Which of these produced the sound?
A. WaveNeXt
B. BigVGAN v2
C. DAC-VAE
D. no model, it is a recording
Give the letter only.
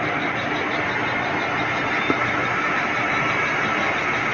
D